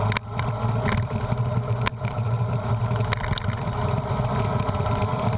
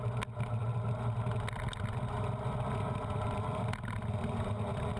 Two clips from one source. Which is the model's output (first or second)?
first